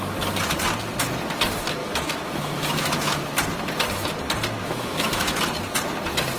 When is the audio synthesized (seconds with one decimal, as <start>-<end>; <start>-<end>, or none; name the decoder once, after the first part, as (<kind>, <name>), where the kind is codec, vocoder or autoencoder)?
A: 1.8-3.2 (autoencoder, DAC-VAE); 4.6-5.4